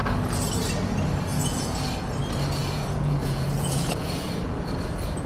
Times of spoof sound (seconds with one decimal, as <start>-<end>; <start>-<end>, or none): 1.3-1.8; 2.6-4.1